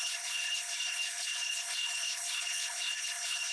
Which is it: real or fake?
fake